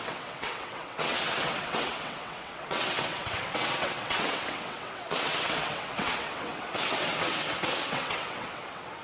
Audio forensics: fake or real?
fake